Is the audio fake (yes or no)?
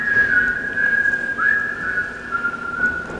no